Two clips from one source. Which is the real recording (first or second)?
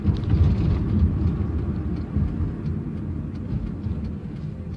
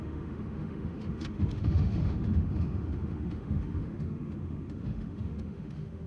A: first